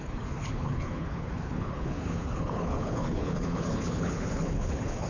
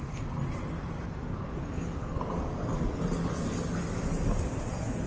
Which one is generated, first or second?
first